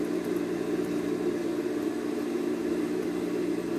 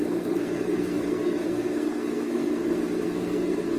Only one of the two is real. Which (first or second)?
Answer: first